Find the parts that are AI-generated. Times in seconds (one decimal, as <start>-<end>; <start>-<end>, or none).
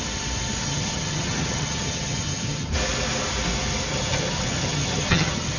0.6-2.7; 3.9-5.6